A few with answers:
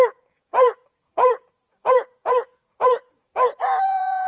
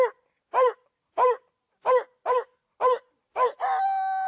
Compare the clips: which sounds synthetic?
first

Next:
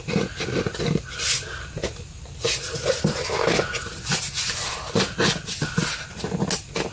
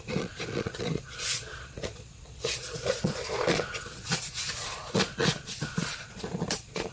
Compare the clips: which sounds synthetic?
second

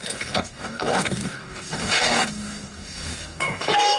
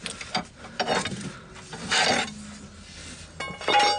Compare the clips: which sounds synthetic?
first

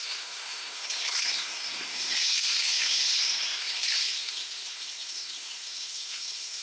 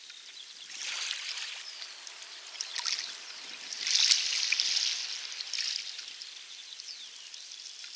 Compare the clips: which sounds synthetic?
first